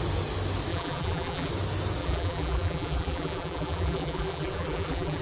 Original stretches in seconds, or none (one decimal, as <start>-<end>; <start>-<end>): 0.0-0.7; 1.5-2.0